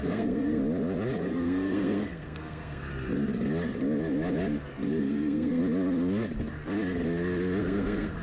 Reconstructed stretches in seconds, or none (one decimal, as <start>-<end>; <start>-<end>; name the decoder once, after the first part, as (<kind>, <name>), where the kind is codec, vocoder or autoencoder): 0.0-0.6 (codec, SNAC); 1.2-2.9; 5.0-5.6; 7.6-8.2